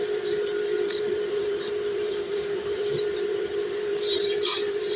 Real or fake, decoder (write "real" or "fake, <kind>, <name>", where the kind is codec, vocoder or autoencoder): fake, vocoder, BigVGAN v2